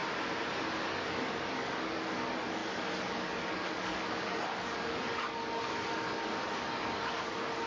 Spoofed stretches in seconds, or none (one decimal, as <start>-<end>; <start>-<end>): 0.8-7.7